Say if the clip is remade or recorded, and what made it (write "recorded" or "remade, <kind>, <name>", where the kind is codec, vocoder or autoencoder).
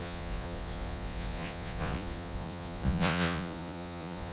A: remade, vocoder, Vocos